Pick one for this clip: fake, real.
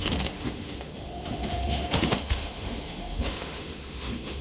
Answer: fake